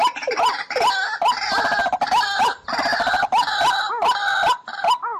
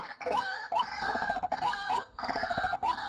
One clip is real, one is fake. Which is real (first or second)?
first